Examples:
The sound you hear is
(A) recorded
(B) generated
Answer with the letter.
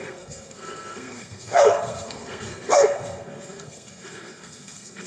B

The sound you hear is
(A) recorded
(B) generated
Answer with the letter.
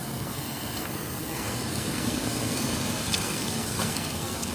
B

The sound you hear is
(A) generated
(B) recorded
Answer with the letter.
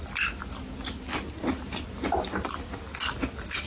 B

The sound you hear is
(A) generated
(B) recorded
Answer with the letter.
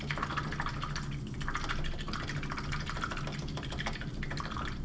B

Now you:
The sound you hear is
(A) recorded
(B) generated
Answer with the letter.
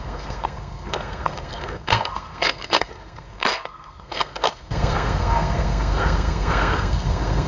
B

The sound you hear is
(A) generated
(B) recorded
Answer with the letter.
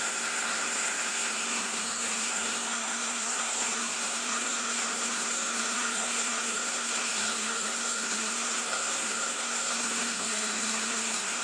A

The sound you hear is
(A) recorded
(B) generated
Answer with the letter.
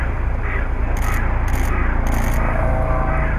A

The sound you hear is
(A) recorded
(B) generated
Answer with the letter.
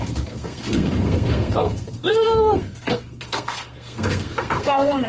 B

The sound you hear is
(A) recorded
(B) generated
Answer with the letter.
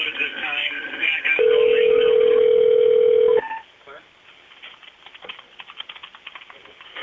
A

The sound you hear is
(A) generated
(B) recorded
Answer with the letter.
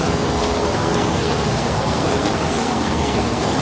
A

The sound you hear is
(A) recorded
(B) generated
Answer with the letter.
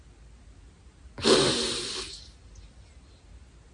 A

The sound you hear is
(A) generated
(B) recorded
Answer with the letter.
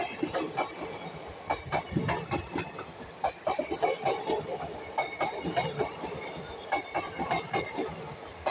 B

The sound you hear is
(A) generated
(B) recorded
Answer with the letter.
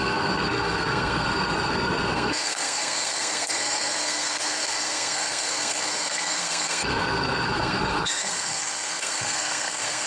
A